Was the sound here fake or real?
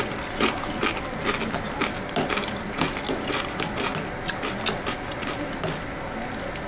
real